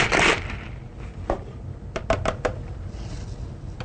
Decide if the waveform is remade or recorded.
recorded